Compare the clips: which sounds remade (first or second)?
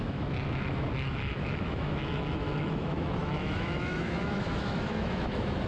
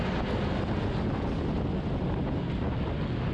first